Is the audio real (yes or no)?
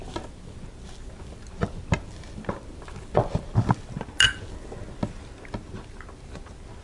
yes